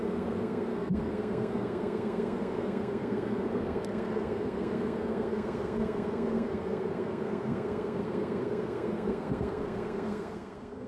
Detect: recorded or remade remade